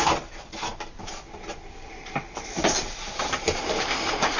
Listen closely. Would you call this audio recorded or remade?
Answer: recorded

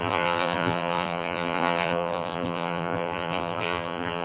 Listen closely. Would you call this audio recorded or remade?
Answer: remade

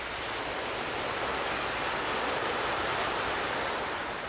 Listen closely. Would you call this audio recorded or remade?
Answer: recorded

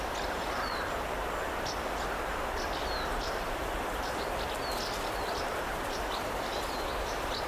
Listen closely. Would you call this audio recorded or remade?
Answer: remade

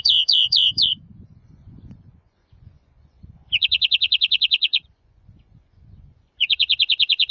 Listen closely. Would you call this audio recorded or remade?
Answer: remade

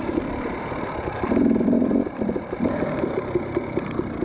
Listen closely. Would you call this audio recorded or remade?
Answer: remade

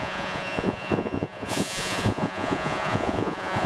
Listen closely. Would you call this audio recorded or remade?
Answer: remade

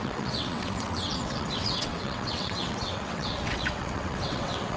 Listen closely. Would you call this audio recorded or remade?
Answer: remade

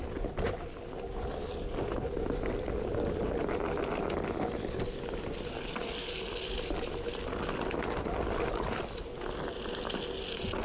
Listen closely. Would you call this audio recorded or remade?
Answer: recorded